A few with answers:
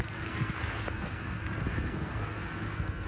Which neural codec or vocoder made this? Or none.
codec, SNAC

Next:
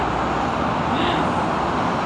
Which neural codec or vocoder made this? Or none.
none